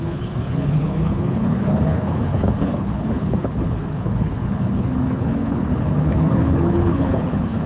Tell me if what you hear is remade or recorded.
remade